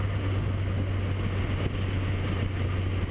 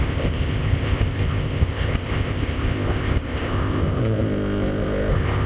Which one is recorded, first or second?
first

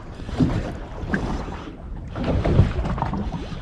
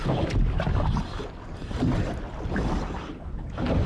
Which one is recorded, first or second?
second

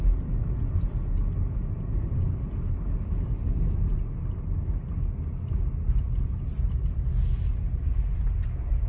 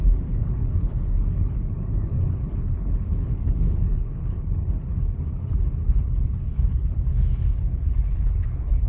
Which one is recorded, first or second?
first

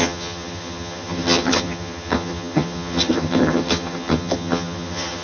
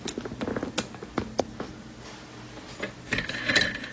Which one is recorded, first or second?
second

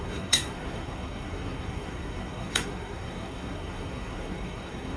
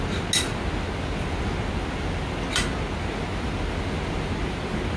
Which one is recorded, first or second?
second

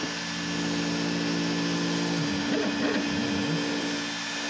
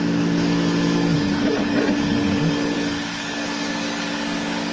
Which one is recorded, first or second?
first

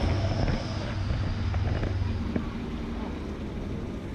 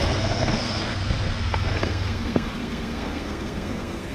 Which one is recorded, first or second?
first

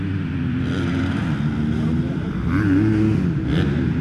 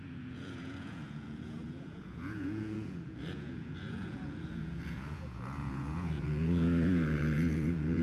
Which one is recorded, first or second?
first